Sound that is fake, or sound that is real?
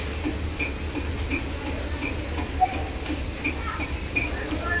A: real